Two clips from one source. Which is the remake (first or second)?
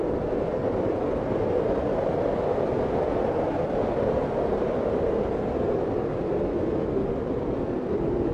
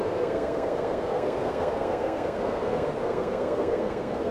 second